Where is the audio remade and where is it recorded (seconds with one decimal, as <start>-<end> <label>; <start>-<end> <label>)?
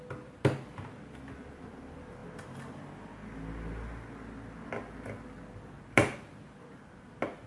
0.0-7.5 recorded